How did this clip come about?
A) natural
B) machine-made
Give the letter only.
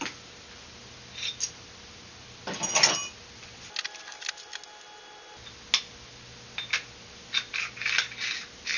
A